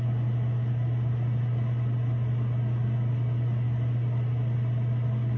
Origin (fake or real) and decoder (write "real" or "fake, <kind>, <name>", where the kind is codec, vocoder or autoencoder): real